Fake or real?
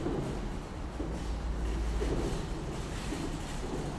real